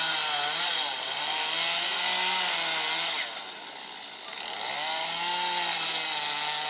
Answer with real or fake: real